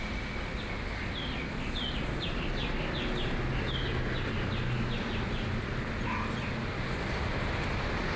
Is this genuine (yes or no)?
yes